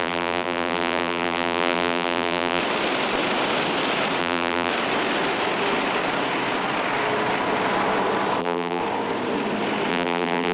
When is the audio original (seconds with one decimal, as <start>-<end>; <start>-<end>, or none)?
2.6-4.2; 4.7-8.4; 8.8-9.9